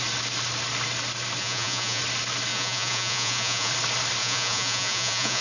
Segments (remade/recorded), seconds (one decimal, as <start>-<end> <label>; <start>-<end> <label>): 0.0-1.4 recorded; 1.4-2.0 remade; 2.0-2.5 recorded; 2.5-3.7 remade; 3.7-4.2 recorded; 4.2-5.4 remade